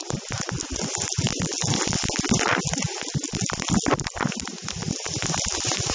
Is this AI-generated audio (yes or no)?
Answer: no